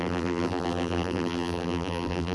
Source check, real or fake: fake